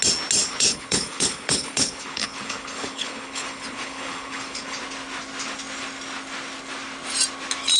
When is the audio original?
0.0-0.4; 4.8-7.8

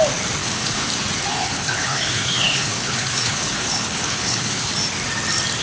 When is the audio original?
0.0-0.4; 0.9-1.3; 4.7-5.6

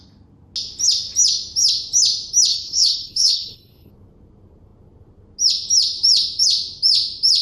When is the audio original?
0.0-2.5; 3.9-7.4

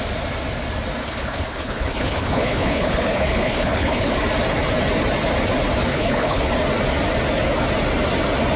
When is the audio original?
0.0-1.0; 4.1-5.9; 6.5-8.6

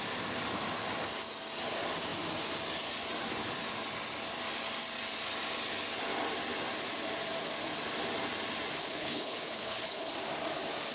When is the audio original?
0.0-8.8; 10.1-10.9

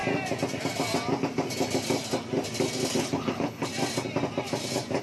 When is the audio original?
0.0-3.0; 3.7-5.0